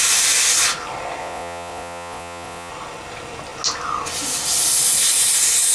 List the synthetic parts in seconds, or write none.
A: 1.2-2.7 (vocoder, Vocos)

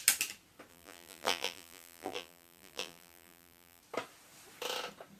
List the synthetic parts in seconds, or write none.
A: 0.7-3.8 (vocoder, BigVGAN v2)

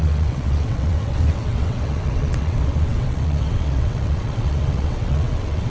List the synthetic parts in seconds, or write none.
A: 0.0-5.7 (vocoder, WaveNeXt)

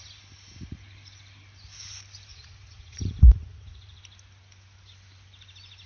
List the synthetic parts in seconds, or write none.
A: 2.3-4.0 (vocoder, Vocos)

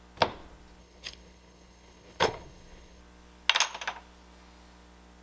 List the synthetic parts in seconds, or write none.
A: 0.8-3.0 (codec, HILCodec)

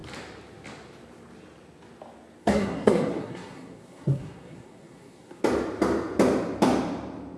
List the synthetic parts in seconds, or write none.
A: 2.4-5.4 (codec, SNAC)

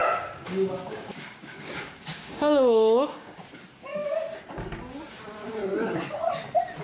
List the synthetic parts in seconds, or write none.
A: 0.0-3.4 (codec, DAC)

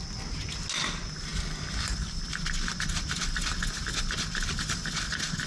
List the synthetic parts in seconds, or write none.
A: none